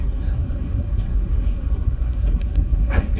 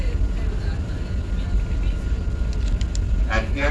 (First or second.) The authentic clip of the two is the second